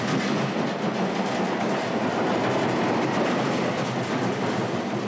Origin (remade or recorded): recorded